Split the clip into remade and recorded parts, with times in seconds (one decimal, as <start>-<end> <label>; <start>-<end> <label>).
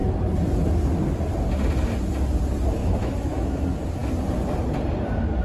0.0-2.8 recorded; 2.8-3.6 remade; 3.6-5.4 recorded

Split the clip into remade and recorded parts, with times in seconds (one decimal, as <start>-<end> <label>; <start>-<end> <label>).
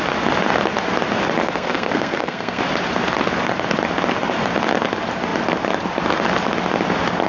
0.0-1.4 recorded; 1.4-2.6 remade; 2.6-7.3 recorded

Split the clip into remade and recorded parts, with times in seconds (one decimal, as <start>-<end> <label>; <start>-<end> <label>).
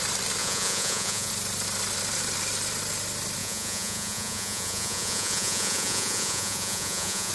0.0-0.4 recorded; 0.4-1.3 remade; 1.3-3.4 recorded; 3.4-7.3 remade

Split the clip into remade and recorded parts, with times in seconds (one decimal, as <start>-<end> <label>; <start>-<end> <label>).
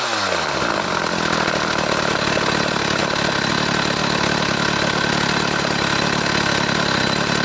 0.0-7.4 recorded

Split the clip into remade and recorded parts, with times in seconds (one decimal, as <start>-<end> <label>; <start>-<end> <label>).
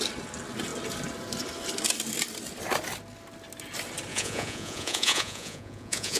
0.0-4.1 recorded; 4.1-6.2 remade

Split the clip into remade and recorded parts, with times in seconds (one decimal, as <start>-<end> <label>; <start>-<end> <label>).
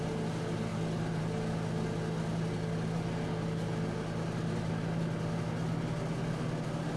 0.0-7.0 recorded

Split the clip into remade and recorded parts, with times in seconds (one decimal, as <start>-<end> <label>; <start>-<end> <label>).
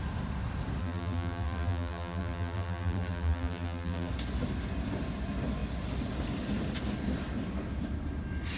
0.0-0.8 recorded; 0.8-4.1 remade; 4.1-8.6 recorded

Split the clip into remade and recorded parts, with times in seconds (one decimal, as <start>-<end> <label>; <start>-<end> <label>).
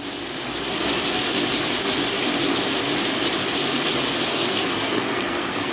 0.0-4.3 recorded; 4.3-5.7 remade